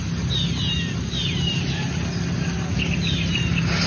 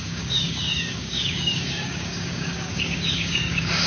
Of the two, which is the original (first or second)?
first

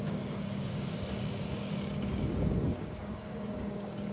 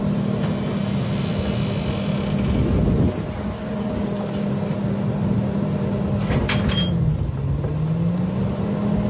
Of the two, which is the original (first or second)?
second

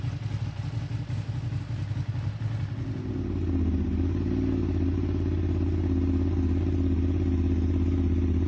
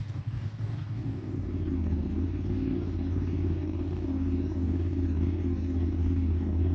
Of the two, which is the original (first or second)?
first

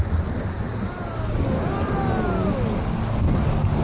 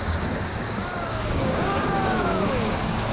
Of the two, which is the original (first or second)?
first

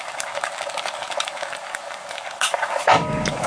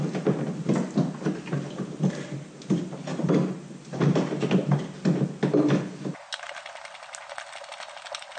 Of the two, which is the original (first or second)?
second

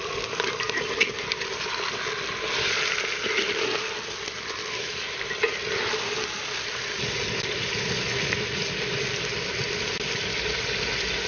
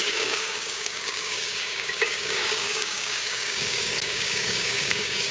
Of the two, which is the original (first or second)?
first